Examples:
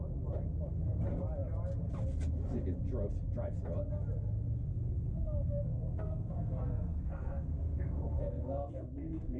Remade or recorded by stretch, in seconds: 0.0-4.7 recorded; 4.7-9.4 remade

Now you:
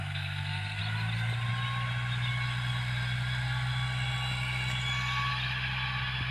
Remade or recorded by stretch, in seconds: 0.0-0.8 remade; 0.8-6.3 recorded